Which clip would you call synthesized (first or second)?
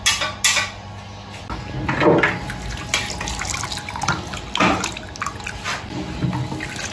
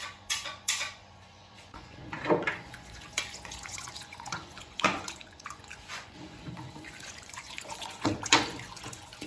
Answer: second